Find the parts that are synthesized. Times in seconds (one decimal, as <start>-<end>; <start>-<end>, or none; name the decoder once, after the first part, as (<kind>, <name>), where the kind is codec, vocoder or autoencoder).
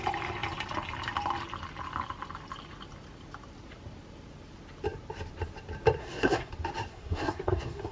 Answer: 6.0-6.5 (codec, SNAC); 6.9-7.9